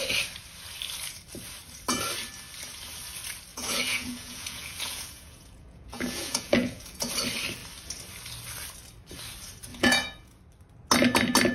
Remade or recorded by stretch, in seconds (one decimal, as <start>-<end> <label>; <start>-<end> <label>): 0.0-3.5 recorded; 3.5-7.1 remade; 7.1-9.7 recorded; 9.7-10.4 remade; 10.4-11.5 recorded